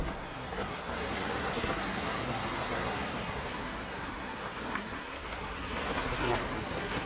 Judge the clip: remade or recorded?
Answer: remade